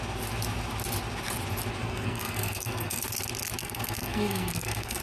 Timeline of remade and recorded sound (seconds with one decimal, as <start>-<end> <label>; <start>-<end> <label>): 0.0-1.8 recorded; 1.8-3.0 remade; 3.0-3.6 recorded; 3.6-5.0 remade